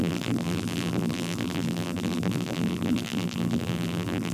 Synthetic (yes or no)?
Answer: yes